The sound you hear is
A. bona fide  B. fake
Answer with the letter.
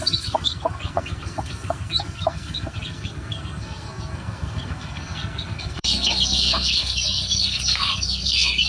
B